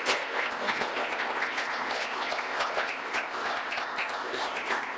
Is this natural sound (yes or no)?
no